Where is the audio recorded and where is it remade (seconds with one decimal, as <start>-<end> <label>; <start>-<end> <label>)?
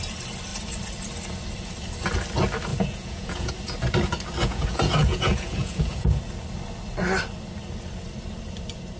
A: 0.0-2.7 recorded; 2.7-3.5 remade; 3.5-4.4 recorded; 4.4-6.2 remade; 6.2-9.0 recorded